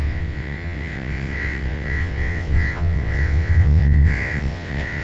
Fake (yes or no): yes